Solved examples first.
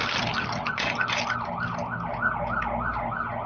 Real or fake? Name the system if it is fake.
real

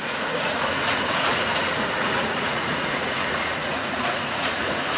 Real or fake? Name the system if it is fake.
fake, vocoder, Vocos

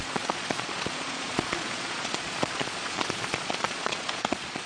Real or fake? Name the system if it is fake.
fake, vocoder, Vocos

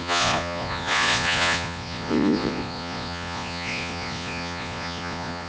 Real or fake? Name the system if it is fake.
fake, vocoder, Vocos